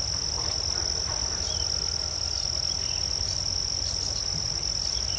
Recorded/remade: recorded